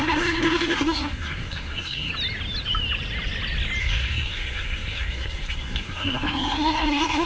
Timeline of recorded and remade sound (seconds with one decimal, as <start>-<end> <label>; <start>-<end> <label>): 0.0-2.1 remade; 2.1-3.8 recorded; 3.8-7.3 remade